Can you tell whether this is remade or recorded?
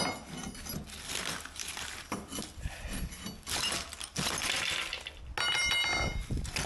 recorded